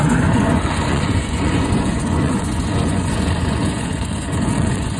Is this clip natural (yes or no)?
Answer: no